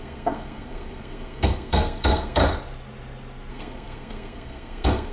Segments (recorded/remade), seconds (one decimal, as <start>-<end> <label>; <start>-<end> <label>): 0.0-2.4 remade; 2.4-3.5 recorded; 3.5-5.1 remade